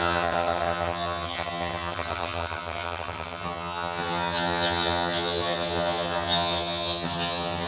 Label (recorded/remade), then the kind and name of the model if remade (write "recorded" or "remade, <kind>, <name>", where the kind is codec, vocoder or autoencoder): remade, vocoder, HiFi-GAN